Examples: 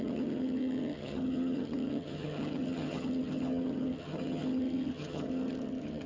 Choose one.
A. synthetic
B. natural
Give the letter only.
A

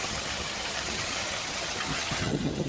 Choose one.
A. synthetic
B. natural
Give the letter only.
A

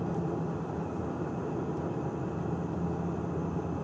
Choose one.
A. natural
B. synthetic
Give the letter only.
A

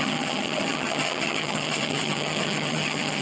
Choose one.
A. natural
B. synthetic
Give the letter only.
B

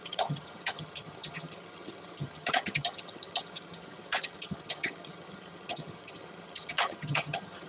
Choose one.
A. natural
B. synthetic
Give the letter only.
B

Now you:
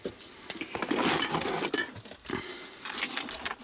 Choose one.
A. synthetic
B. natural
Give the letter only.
B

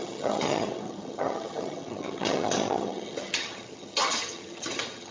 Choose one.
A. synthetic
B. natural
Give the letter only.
A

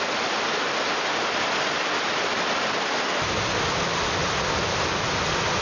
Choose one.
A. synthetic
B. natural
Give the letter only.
B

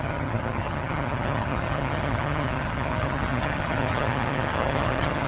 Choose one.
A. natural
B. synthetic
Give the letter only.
B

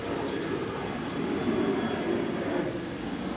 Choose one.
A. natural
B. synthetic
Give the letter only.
A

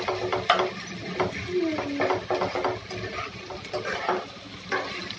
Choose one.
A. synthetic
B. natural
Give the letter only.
B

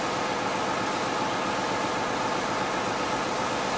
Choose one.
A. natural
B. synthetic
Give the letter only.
A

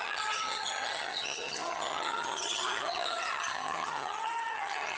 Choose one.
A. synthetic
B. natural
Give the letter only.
A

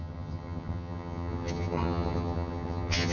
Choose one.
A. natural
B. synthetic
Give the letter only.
B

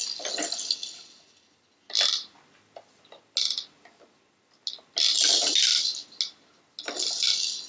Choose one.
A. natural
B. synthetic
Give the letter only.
A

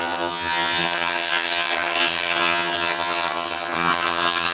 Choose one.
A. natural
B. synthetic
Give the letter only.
B